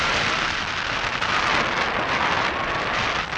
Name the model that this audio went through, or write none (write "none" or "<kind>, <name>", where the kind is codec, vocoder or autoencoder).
none